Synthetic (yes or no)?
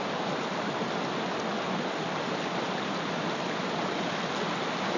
no